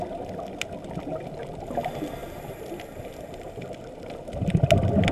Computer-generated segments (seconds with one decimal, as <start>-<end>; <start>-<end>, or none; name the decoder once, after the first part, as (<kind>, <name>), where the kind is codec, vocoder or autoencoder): none